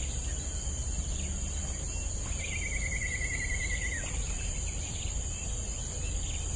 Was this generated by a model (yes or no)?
no